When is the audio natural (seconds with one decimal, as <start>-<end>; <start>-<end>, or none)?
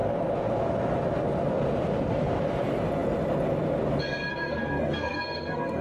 0.0-4.3